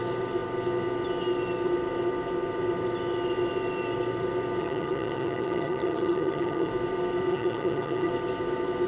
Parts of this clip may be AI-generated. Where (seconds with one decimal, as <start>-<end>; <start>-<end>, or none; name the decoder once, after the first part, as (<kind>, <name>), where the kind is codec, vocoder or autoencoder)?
4.6-6.7 (vocoder, HiFi-GAN); 7.3-8.1